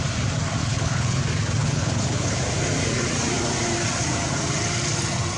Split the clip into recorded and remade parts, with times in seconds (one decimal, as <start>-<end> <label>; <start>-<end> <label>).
0.0-0.6 recorded; 0.6-1.2 remade; 1.2-1.6 recorded; 1.6-2.4 remade; 2.4-5.4 recorded